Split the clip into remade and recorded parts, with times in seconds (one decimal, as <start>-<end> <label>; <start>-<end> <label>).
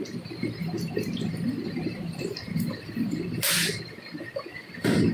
0.0-1.9 recorded; 1.9-3.8 remade; 3.8-4.5 recorded; 4.5-5.1 remade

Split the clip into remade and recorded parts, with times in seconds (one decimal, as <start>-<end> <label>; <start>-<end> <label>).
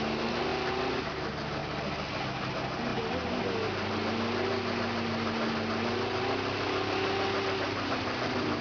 0.0-8.6 recorded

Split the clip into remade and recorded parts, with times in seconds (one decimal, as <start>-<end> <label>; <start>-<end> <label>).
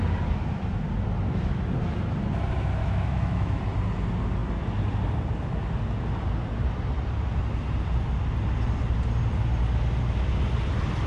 0.0-2.8 recorded; 2.8-3.6 remade; 3.6-11.1 recorded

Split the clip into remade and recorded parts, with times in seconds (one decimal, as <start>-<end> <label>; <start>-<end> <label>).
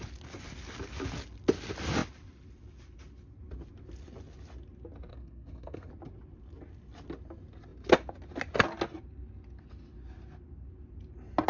0.0-5.1 recorded; 5.1-5.9 remade; 5.9-11.5 recorded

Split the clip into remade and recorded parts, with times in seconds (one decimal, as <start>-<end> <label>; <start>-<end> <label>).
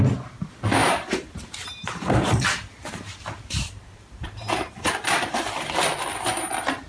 0.0-0.8 recorded; 0.8-4.9 remade; 4.9-6.9 recorded